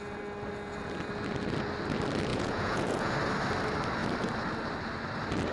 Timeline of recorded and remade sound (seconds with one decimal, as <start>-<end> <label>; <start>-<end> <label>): 0.0-2.3 recorded; 2.3-3.1 remade; 3.1-5.5 recorded